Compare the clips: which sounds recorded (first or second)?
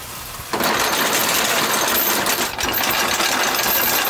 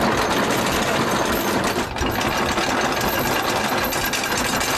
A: second